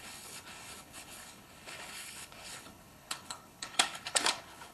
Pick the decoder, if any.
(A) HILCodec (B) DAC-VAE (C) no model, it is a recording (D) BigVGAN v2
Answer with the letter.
A